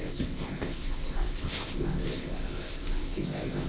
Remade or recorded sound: remade